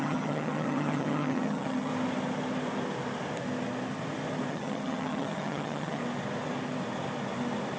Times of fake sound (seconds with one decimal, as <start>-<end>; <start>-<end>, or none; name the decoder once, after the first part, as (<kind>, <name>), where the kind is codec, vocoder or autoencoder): 0.0-1.9 (vocoder, HiFi-GAN); 4.5-6.0